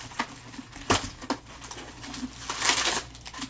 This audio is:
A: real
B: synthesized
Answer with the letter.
A